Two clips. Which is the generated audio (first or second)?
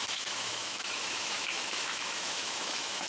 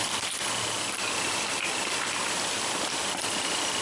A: first